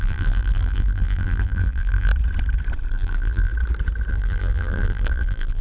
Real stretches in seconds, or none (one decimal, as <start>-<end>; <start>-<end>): 2.1-2.9; 3.5-4.1